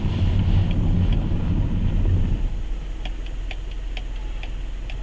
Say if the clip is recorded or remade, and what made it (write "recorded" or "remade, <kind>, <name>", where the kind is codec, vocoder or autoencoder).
recorded